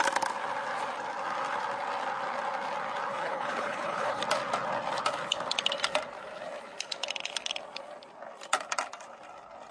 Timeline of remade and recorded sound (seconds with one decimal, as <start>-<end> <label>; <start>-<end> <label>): 0.0-3.1 recorded; 3.1-4.2 remade; 4.2-9.7 recorded